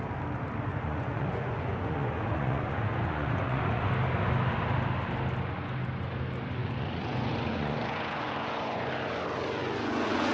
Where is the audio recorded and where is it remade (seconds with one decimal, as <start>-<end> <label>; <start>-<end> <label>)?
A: 0.0-0.7 recorded; 0.7-3.9 remade; 3.9-6.6 recorded; 6.6-8.9 remade; 8.9-9.6 recorded; 9.6-10.3 remade